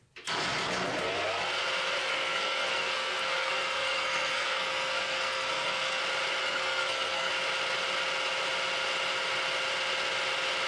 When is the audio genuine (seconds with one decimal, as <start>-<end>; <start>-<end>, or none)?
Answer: 0.0-2.0; 6.0-6.4; 7.3-10.7